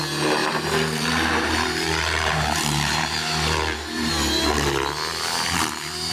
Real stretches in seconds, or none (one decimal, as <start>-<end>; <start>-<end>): 0.0-0.4; 4.1-5.1